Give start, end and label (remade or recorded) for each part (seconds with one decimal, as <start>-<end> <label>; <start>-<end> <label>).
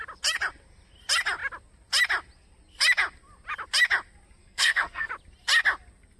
0.0-4.4 recorded; 4.4-5.1 remade; 5.1-6.2 recorded